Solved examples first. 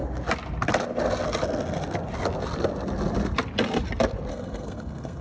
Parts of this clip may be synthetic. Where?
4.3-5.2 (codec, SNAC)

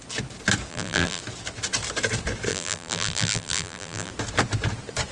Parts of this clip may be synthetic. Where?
0.7-1.2 (vocoder, BigVGAN v2); 2.5-4.1

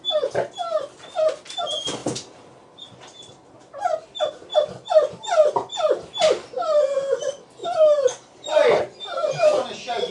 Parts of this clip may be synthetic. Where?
7.6-8.8 (vocoder, BigVGAN v2)

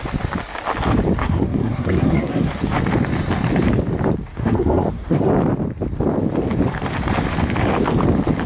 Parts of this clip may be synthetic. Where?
1.2-2.5 (codec, SNAC); 4.3-5.3

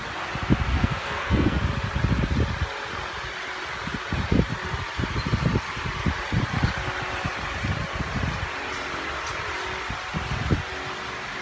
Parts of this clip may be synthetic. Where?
0.7-1.6 (codec, SNAC)

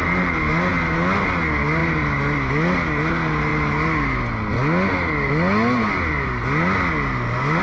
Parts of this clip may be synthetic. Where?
none